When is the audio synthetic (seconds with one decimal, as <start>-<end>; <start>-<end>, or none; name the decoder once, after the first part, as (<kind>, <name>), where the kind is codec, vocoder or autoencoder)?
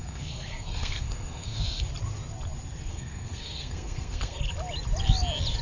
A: 0.0-1.8 (codec, SNAC); 2.9-4.4